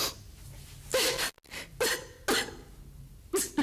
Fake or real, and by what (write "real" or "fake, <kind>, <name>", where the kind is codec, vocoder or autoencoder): real